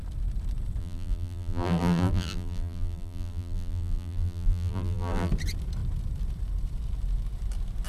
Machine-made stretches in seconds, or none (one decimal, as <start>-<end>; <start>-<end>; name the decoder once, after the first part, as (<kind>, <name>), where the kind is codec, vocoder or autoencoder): 0.8-5.3 (vocoder, BigVGAN v2)